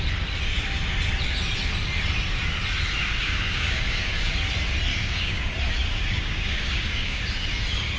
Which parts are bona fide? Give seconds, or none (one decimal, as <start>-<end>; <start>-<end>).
0.0-3.0; 4.3-4.9; 5.4-5.9; 7.2-8.0